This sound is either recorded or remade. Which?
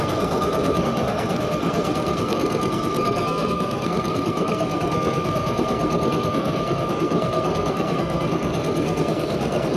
remade